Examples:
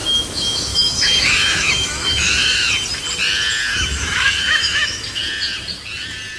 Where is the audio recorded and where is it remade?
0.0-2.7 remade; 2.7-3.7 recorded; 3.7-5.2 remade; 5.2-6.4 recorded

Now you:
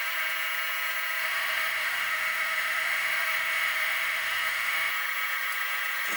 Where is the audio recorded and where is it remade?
0.0-1.2 recorded; 1.2-4.9 remade; 4.9-6.2 recorded

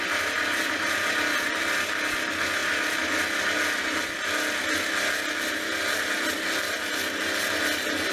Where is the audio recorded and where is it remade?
0.0-8.1 recorded

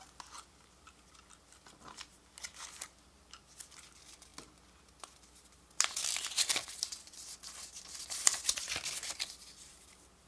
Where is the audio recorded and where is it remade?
0.0-10.3 recorded

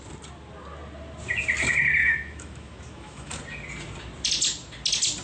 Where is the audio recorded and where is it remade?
0.0-2.0 recorded; 2.0-3.4 remade; 3.4-5.2 recorded